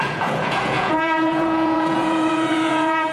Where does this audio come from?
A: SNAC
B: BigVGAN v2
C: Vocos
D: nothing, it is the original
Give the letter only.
C